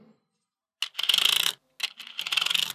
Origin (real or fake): real